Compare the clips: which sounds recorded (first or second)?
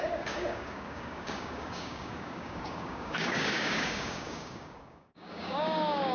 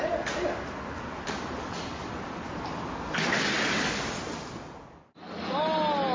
second